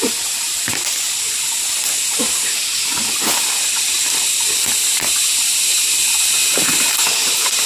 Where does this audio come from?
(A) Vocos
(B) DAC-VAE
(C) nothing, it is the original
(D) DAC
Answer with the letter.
C